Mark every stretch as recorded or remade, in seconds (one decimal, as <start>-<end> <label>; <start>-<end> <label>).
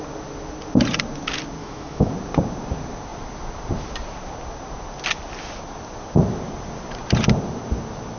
0.0-1.6 recorded; 1.6-2.1 remade; 2.1-8.2 recorded